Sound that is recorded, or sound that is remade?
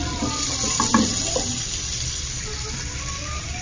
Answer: recorded